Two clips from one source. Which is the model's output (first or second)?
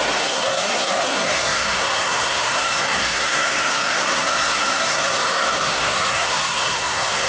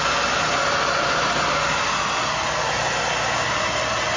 first